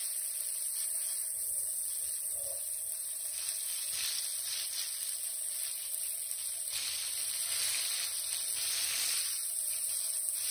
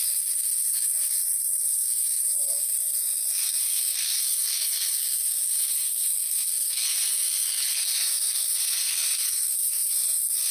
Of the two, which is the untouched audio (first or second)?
first